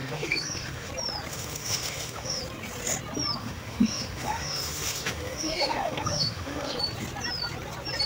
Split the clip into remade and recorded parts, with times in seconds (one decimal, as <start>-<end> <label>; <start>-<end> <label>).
0.0-0.9 remade; 0.9-1.3 recorded; 1.3-2.4 remade; 2.4-3.4 recorded; 3.4-6.8 remade; 6.8-8.1 recorded